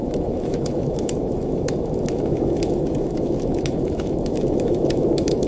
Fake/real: fake